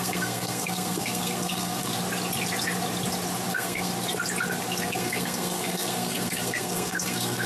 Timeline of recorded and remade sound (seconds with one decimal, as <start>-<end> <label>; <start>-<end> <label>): 0.0-1.9 remade; 1.9-3.5 recorded; 3.5-3.9 remade; 3.9-4.8 recorded; 4.8-7.5 remade